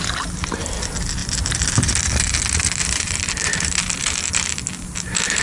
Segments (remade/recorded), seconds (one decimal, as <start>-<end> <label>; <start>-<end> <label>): 0.0-1.2 recorded; 1.2-3.8 remade; 3.8-5.4 recorded